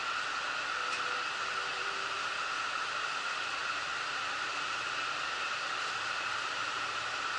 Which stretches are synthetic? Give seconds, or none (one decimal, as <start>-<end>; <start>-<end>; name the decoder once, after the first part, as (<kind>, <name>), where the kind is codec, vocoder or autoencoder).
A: 1.7-3.1 (vocoder, BigVGAN v2); 3.6-7.4